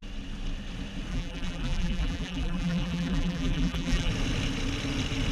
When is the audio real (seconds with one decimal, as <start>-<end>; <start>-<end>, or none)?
0.0-1.1; 4.1-5.3